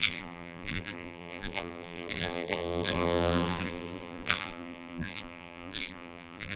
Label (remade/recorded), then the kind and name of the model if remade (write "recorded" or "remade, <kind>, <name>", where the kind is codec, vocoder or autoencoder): remade, vocoder, BigVGAN v2